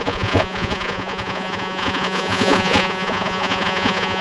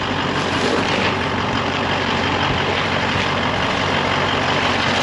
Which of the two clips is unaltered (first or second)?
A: second